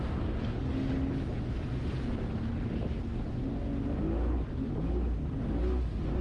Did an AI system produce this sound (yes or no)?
no